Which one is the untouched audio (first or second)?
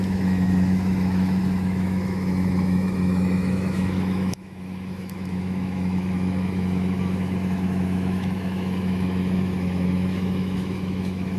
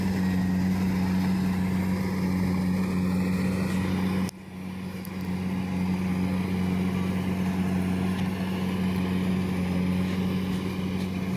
second